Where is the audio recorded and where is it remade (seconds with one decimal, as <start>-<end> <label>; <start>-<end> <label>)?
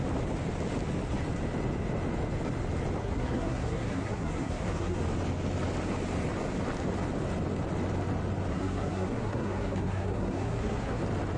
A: 0.0-3.0 recorded; 3.0-5.0 remade; 5.0-8.5 recorded; 8.5-11.0 remade; 11.0-11.4 recorded